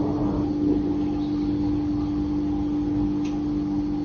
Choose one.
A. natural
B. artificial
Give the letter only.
A